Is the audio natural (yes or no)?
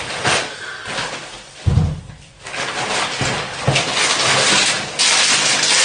yes